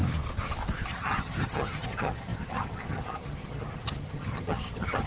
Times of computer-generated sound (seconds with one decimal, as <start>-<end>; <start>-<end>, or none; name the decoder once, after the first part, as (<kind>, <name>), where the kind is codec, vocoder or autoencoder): 0.9-5.1 (vocoder, HiFi-GAN)